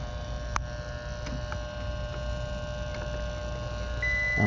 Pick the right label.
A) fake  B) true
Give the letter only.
B